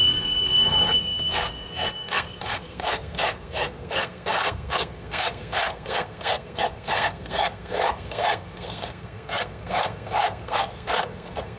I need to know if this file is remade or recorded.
remade